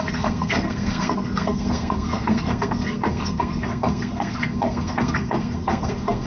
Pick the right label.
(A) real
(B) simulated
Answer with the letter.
B